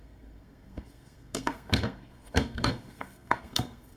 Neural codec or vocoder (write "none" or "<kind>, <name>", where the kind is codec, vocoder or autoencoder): codec, SNAC